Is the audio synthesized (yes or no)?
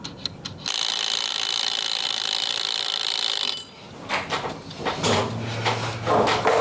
no